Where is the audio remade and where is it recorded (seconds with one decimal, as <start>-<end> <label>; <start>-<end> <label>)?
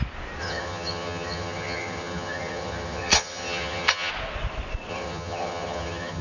0.0-0.4 recorded; 0.4-4.1 remade; 4.1-4.9 recorded; 4.9-6.2 remade